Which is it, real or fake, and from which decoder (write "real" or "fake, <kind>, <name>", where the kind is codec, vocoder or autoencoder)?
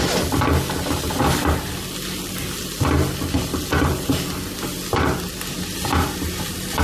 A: real